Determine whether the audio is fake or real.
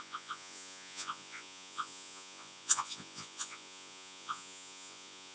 fake